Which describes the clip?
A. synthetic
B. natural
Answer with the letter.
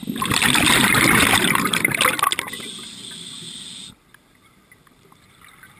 B